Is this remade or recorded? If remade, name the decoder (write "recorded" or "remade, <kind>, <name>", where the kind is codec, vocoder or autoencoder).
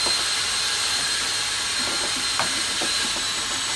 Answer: recorded